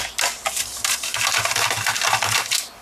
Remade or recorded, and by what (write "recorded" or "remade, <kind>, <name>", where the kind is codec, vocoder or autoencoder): recorded